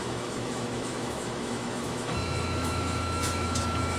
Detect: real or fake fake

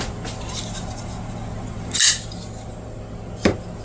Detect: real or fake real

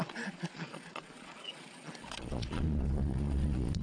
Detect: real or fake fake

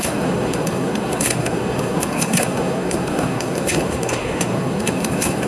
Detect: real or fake fake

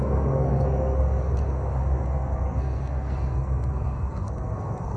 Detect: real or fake fake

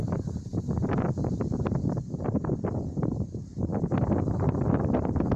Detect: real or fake real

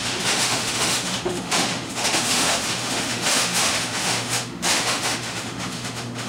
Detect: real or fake fake